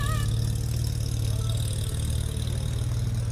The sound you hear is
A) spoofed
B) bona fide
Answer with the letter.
B